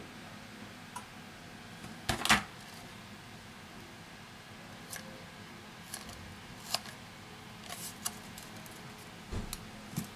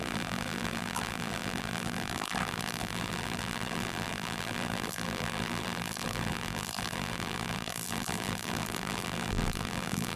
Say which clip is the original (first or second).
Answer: first